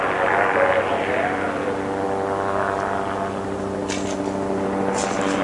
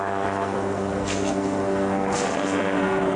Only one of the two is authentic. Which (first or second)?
first